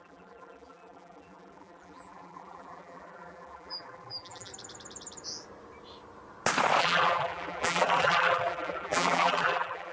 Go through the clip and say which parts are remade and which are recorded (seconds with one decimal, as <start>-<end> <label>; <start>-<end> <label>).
0.0-4.5 remade; 4.5-6.8 recorded; 6.8-9.9 remade